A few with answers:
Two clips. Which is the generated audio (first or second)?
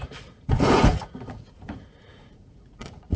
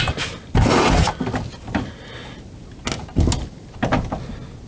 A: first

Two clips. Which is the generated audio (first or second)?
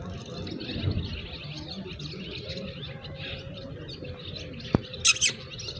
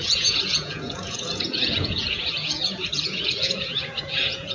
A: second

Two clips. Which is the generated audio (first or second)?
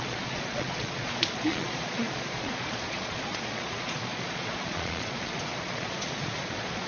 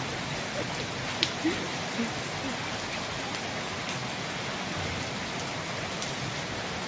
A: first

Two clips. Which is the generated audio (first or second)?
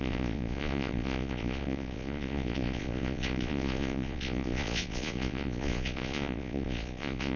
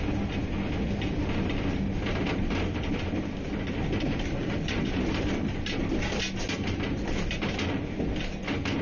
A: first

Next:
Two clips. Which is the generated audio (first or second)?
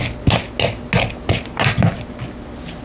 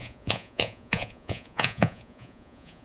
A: second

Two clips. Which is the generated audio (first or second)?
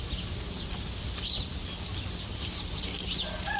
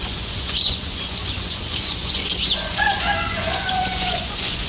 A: second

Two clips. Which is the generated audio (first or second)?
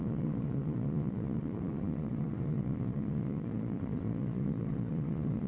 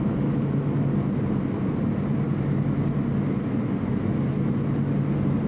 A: first